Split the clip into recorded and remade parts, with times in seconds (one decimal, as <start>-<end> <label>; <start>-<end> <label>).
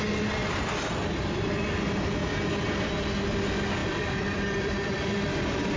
0.0-0.4 recorded; 0.4-1.7 remade; 1.7-3.8 recorded; 3.8-5.8 remade